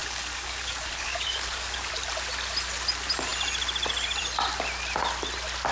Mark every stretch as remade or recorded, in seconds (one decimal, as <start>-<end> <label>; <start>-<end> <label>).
0.0-1.9 remade; 1.9-5.7 recorded